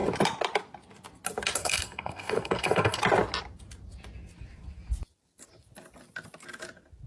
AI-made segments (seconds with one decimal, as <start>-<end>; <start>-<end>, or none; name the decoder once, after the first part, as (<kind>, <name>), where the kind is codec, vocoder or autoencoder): 1.6-3.0 (codec, SNAC)